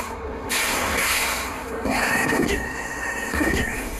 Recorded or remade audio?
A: remade